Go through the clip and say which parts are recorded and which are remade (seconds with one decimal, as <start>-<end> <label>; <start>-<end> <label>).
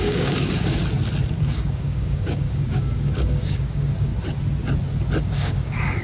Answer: 0.0-0.8 remade; 0.8-1.4 recorded; 1.4-4.1 remade; 4.1-5.2 recorded; 5.2-6.0 remade